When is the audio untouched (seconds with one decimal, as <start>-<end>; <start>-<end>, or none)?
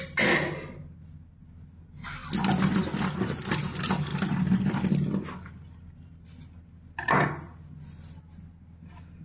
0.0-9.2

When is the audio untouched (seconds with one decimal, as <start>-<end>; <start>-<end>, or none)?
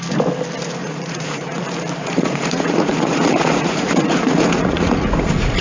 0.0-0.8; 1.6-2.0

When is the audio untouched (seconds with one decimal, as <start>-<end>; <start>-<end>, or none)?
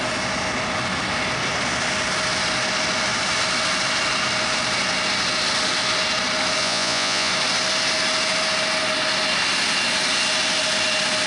0.0-6.6; 7.3-11.3